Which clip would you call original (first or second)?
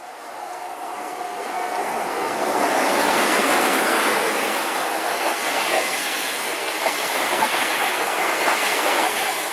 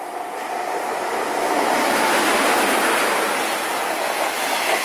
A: second